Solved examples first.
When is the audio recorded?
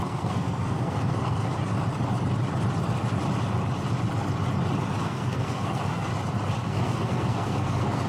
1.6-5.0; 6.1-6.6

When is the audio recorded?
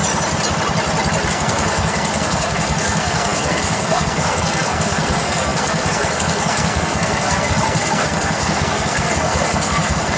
0.0-1.3